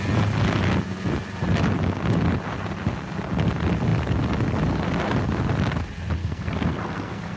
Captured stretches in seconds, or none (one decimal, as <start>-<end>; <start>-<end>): 0.0-6.2